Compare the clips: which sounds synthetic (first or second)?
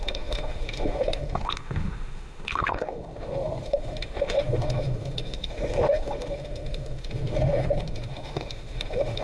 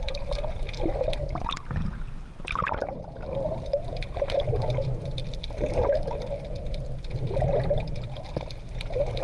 first